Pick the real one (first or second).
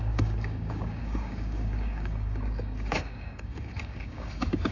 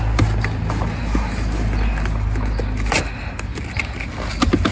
second